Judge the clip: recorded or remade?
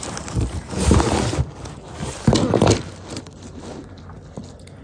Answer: recorded